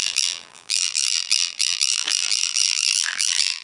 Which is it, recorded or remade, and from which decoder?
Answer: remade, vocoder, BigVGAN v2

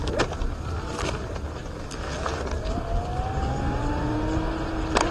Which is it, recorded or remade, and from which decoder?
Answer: recorded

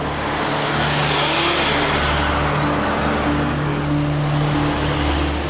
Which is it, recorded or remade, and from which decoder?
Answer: recorded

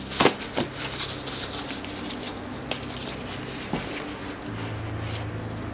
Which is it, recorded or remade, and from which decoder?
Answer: recorded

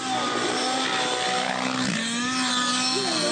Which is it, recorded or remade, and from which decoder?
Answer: recorded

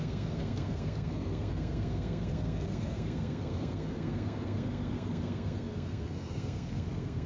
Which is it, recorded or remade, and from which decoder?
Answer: remade, codec, SNAC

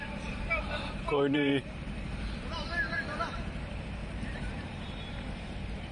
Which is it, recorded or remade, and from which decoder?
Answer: remade, vocoder, BigVGAN v2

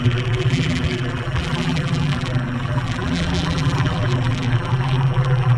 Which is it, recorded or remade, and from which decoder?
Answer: remade, vocoder, BigVGAN v2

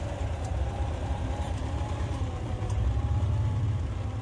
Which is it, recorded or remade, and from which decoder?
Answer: remade, vocoder, BigVGAN v2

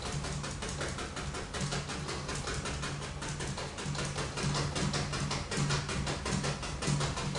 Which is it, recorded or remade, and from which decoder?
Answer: recorded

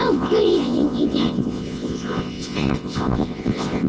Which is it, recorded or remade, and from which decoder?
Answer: remade, vocoder, Vocos